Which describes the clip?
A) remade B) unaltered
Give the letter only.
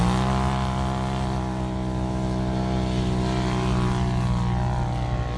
B